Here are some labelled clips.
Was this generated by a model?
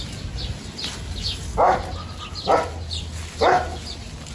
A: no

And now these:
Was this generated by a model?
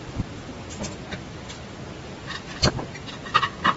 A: no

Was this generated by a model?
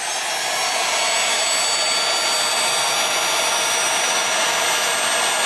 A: no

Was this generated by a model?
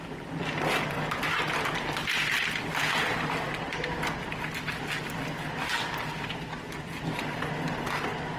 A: no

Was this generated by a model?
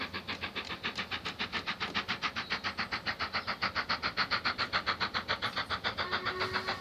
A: no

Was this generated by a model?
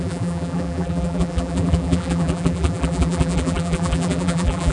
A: yes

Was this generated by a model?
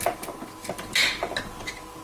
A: no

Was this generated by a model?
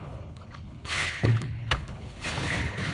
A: yes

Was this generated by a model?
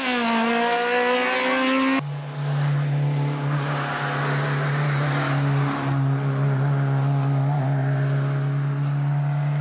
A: no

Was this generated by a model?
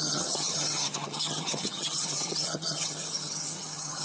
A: yes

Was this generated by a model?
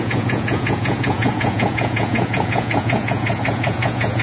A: yes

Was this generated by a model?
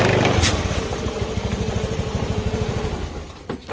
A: no